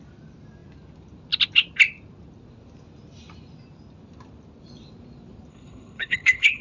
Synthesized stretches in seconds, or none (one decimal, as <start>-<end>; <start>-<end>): 5.5-6.6